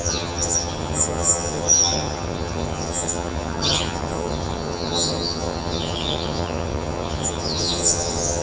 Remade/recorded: remade